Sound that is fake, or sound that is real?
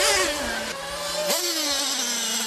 real